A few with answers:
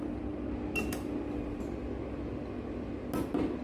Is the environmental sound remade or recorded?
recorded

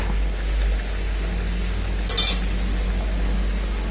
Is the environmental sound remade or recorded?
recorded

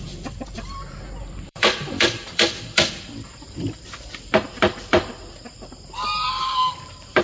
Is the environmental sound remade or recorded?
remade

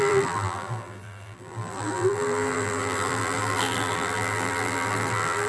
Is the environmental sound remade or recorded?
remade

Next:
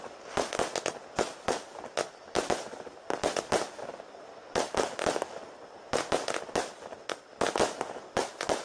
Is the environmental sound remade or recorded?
recorded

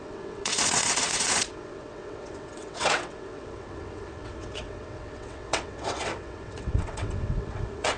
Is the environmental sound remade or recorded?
remade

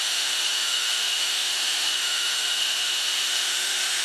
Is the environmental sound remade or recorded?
remade